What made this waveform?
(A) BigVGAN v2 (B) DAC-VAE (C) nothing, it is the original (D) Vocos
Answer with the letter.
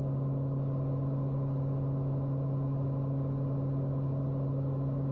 C